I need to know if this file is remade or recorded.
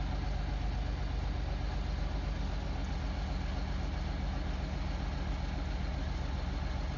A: recorded